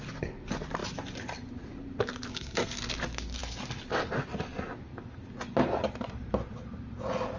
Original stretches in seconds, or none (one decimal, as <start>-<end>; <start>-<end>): 0.0-2.3; 2.8-7.4